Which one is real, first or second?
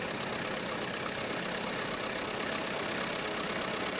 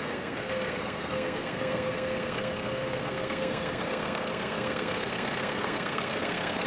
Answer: first